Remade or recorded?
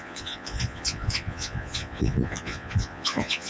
remade